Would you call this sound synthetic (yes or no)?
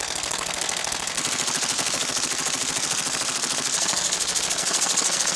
yes